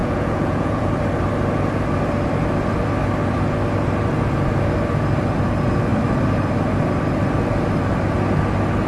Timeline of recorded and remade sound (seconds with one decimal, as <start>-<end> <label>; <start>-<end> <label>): 0.0-0.9 remade; 0.9-8.9 recorded